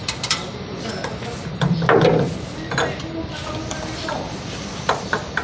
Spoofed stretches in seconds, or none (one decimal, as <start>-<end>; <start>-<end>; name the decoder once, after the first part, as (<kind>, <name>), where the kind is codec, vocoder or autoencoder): 0.0-2.1 (vocoder, BigVGAN v2); 3.5-5.4